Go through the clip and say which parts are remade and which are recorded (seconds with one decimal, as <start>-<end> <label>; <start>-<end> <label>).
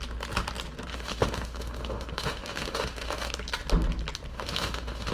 0.0-0.9 recorded; 0.9-3.3 remade; 3.3-4.3 recorded; 4.3-5.1 remade